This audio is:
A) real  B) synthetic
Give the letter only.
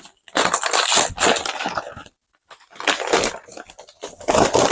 A